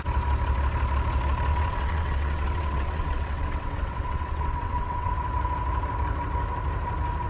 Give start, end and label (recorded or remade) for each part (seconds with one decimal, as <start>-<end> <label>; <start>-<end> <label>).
0.0-1.5 recorded; 1.5-5.1 remade; 5.1-7.3 recorded